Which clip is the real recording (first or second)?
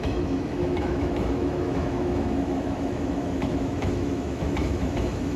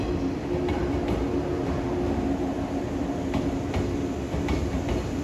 second